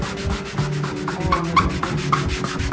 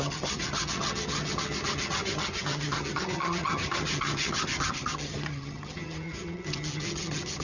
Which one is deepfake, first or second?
second